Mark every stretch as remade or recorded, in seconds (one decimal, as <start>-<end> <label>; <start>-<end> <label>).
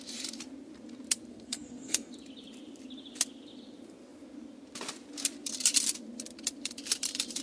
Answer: 0.0-1.3 recorded; 1.3-2.1 remade; 2.1-7.4 recorded